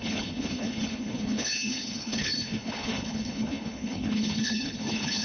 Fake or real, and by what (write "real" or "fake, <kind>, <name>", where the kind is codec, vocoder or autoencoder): fake, codec, HILCodec